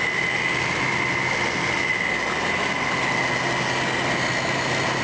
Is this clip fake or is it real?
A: real